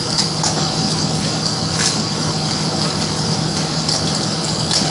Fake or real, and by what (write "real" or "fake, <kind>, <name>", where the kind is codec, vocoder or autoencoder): fake, codec, DAC